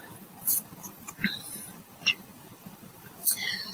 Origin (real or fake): fake